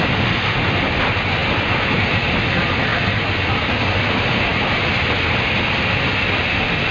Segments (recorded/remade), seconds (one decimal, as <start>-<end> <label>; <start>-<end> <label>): 0.0-6.9 recorded